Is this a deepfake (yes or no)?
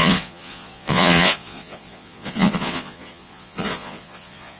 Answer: yes